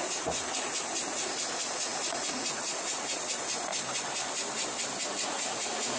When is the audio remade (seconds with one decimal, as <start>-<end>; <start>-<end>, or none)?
0.0-3.7; 5.1-6.0